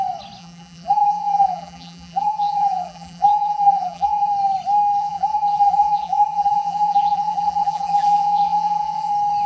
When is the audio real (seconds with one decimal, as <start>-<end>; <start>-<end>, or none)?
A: 0.0-0.4; 4.3-5.0; 9.1-9.5